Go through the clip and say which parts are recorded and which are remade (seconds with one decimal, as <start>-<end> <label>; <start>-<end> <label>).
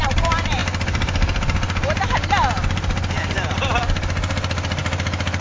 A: 0.0-5.4 recorded